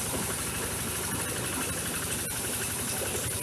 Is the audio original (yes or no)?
yes